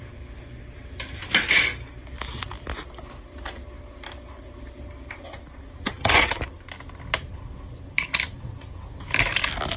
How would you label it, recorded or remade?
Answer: recorded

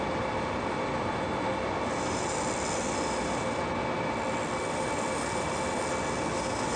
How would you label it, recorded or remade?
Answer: recorded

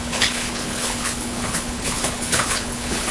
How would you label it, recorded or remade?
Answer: remade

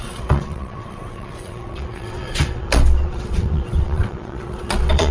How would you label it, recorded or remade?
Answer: remade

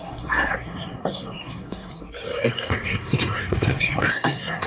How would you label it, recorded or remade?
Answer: remade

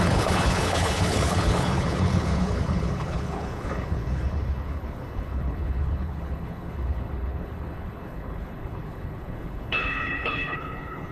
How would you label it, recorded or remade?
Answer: remade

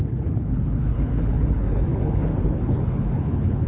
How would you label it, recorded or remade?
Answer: remade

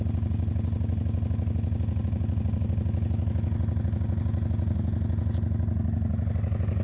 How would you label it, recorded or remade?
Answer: recorded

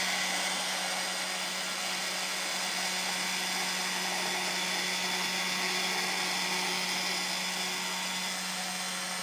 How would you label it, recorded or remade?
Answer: recorded